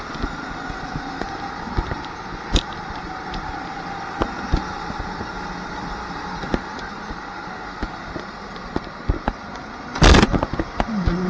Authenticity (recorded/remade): recorded